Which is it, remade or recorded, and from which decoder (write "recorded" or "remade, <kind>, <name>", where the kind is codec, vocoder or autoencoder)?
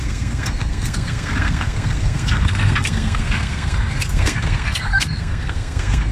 remade, codec, SNAC